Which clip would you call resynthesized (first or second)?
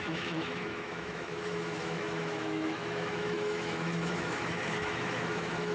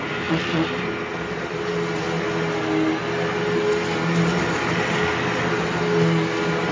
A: first